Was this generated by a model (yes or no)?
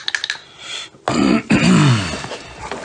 no